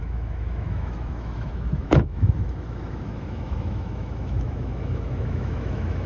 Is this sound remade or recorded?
remade